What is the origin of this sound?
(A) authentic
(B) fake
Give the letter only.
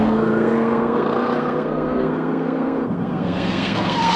B